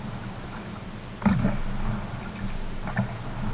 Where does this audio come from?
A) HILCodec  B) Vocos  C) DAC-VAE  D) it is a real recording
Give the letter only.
D